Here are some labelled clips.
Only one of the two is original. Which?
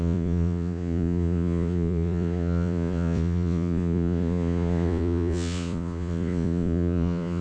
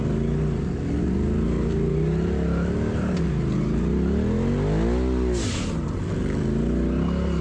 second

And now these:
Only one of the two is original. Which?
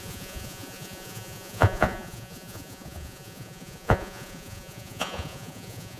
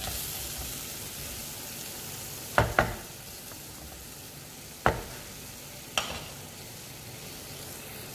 second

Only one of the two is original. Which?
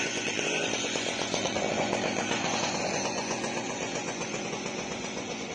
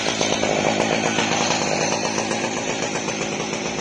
second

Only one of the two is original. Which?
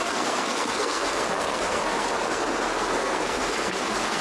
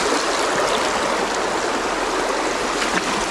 second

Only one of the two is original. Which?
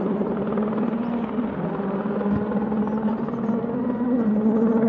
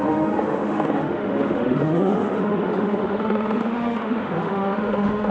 first